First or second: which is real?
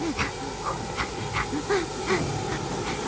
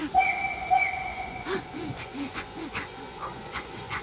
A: first